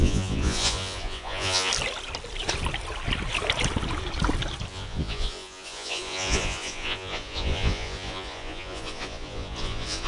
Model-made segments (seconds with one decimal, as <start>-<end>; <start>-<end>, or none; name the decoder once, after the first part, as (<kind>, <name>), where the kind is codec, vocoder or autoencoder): 0.0-1.7 (vocoder, Vocos); 4.7-10.1